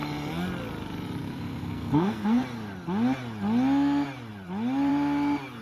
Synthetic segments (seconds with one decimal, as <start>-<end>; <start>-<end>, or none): 1.2-2.4